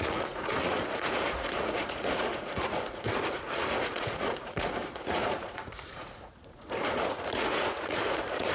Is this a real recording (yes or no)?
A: no